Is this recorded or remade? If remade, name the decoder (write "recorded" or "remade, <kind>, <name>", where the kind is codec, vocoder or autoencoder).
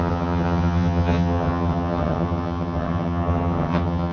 remade, vocoder, HiFi-GAN